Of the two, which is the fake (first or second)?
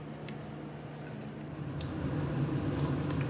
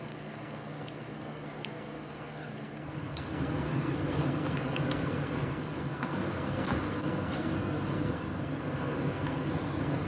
second